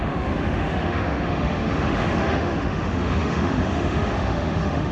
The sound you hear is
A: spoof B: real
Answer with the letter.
A